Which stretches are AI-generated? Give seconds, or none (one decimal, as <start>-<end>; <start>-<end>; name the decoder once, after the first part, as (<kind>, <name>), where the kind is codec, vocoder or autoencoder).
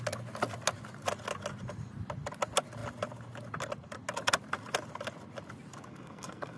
5.9-6.6 (codec, SNAC)